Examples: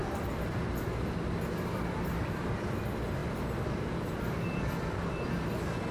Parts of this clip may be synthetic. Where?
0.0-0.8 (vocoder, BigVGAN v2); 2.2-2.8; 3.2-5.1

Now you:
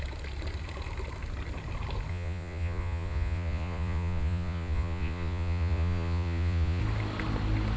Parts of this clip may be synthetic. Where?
2.1-6.8 (vocoder, Vocos)

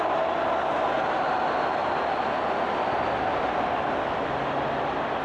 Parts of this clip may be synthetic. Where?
none

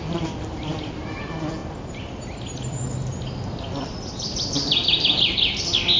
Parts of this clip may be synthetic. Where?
none